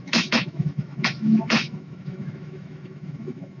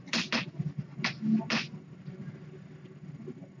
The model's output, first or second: first